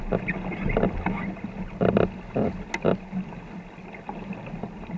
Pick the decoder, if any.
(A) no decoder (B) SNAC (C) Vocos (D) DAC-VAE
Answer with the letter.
A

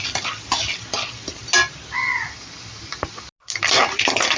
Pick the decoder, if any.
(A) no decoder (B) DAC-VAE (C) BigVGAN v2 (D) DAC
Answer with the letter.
A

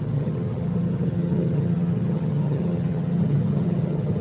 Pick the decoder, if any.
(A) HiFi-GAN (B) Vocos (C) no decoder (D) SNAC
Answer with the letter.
A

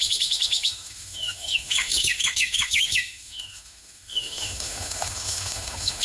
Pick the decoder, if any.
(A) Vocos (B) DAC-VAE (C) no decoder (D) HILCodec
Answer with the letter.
B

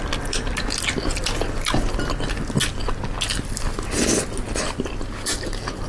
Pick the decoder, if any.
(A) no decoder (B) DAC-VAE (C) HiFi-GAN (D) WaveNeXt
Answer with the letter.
A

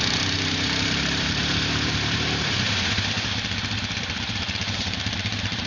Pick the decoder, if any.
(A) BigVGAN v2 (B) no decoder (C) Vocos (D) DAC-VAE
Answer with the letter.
A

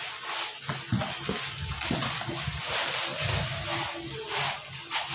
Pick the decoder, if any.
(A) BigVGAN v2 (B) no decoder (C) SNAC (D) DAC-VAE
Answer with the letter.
B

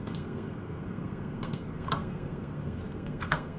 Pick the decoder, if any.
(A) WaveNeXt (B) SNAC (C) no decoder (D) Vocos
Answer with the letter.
B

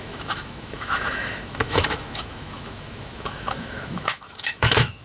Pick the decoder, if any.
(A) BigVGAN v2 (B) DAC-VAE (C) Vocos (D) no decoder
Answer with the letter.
B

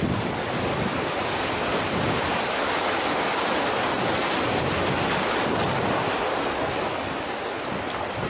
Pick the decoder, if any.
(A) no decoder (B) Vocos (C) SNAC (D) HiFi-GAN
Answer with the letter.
A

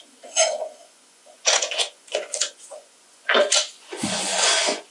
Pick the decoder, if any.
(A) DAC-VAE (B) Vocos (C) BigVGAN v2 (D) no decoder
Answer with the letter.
B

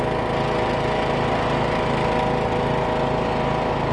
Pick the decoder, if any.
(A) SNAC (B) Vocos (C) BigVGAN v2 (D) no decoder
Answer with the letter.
D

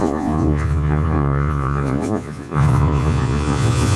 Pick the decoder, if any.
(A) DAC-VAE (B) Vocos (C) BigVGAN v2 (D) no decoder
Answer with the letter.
B